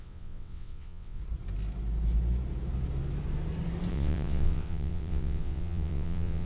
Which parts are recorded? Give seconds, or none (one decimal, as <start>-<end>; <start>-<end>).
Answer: 1.2-3.9